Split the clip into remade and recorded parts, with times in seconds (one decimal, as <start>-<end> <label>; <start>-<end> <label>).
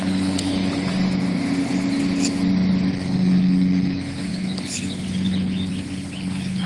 0.0-0.9 remade; 0.9-2.9 recorded; 2.9-6.7 remade